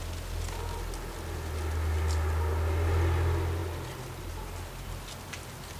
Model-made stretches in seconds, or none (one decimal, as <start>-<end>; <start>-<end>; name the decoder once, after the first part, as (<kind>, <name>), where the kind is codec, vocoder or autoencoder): none